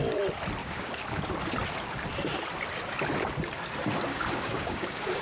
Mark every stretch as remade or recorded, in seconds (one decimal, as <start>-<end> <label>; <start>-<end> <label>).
0.0-0.6 recorded; 0.6-1.2 remade; 1.2-4.1 recorded; 4.1-5.2 remade